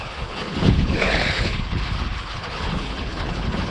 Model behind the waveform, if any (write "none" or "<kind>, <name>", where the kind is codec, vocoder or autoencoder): codec, HILCodec